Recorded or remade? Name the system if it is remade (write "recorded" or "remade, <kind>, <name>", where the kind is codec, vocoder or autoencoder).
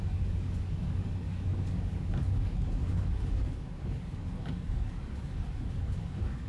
remade, codec, DAC